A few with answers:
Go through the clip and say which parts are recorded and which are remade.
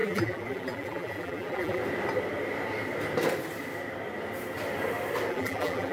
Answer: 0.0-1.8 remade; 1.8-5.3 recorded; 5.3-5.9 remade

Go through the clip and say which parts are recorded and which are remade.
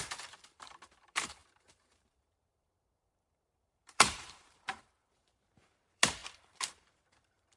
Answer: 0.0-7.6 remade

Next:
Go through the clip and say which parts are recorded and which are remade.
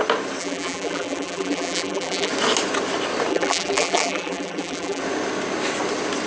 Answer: 0.0-0.4 recorded; 0.4-2.3 remade; 2.3-3.3 recorded; 3.3-5.0 remade; 5.0-6.3 recorded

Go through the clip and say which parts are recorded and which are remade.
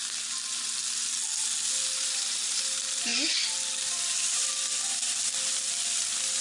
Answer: 0.0-1.7 recorded; 1.7-3.1 remade; 3.1-3.8 recorded; 3.8-4.5 remade; 4.5-6.4 recorded